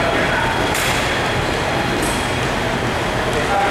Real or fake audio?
real